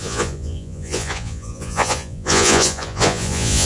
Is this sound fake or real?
fake